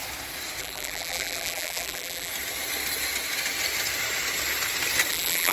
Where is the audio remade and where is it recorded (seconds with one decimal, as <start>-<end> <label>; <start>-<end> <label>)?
0.0-0.6 recorded; 0.6-2.3 remade; 2.3-5.1 recorded; 5.1-5.5 remade